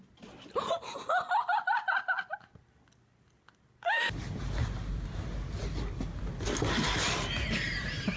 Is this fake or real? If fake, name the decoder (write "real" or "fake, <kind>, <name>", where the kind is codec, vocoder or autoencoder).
real